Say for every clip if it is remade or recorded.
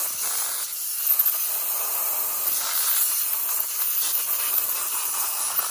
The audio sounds recorded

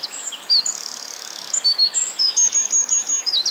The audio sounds remade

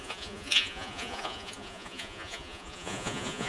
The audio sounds remade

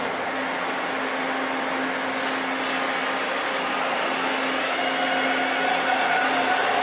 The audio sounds recorded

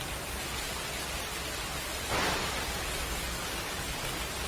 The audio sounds recorded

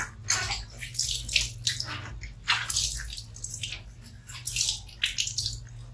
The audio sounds recorded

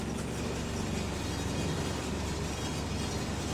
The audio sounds recorded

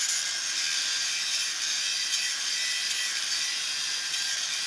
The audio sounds recorded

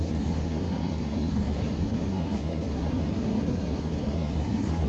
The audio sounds remade